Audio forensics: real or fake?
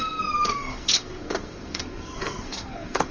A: fake